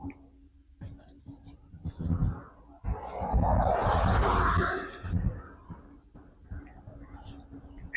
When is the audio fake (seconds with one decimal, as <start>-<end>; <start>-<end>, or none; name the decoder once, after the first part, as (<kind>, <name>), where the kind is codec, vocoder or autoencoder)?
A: none